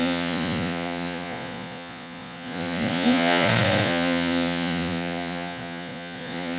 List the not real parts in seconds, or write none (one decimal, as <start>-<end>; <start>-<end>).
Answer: 0.0-6.6